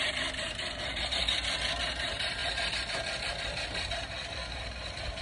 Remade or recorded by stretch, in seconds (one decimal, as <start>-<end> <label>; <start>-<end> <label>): 0.0-1.2 remade; 1.2-1.8 recorded; 1.8-2.4 remade; 2.4-4.5 recorded; 4.5-5.2 remade